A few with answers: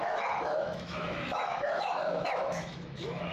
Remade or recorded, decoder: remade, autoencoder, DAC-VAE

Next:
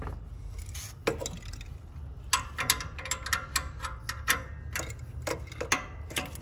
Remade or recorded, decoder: recorded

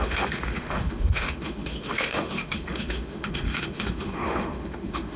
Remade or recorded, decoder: remade, autoencoder, DAC-VAE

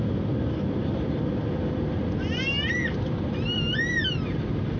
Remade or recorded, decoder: recorded